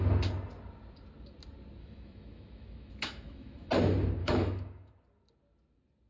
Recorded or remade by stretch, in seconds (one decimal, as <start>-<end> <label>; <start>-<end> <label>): 0.0-1.8 recorded; 1.8-3.7 remade; 3.7-4.2 recorded; 4.2-4.9 remade; 4.9-6.1 recorded